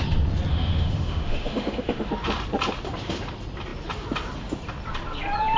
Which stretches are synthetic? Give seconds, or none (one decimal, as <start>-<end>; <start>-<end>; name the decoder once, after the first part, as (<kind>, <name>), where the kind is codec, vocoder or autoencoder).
0.5-2.1 (autoencoder, DAC-VAE)